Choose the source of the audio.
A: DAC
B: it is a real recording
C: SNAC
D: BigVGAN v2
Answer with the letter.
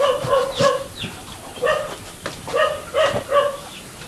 B